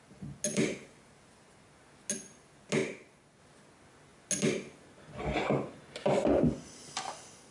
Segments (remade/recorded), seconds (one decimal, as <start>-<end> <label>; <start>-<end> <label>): 0.0-0.5 recorded; 0.5-1.4 remade; 1.4-7.5 recorded